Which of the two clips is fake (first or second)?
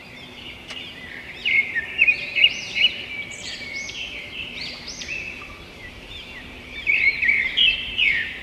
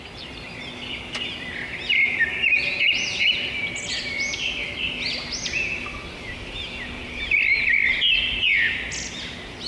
first